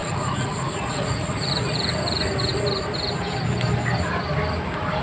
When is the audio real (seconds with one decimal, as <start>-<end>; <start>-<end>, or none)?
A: 1.5-5.0